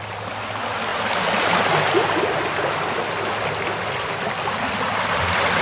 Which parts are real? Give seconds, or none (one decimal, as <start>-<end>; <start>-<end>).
0.0-5.6